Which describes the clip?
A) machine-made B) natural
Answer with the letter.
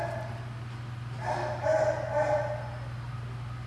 B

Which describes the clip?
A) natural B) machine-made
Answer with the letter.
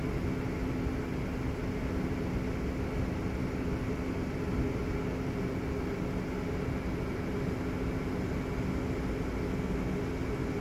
A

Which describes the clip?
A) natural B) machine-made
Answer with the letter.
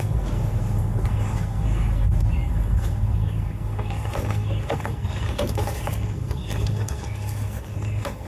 B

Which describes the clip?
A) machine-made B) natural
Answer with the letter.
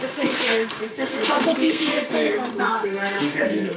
A